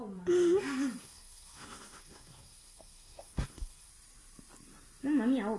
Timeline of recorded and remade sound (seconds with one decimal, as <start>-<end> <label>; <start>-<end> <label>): 0.0-1.0 recorded; 1.0-3.9 remade; 3.9-5.6 recorded